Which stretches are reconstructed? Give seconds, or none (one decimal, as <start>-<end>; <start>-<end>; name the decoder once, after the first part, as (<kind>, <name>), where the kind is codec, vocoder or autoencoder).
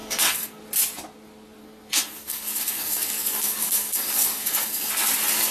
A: 0.0-0.6 (codec, SNAC); 1.6-4.9